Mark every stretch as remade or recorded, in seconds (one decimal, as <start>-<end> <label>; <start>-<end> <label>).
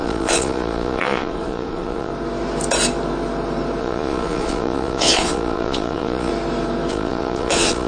0.0-2.1 remade; 2.1-3.8 recorded; 3.8-6.3 remade; 6.3-6.9 recorded; 6.9-7.9 remade